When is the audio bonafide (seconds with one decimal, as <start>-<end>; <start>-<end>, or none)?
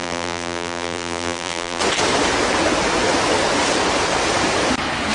1.8-5.1